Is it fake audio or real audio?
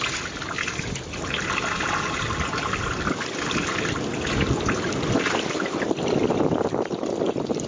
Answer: real